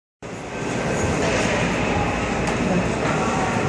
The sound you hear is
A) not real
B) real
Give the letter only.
B